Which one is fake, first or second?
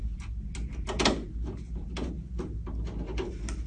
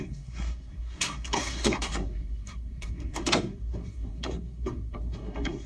second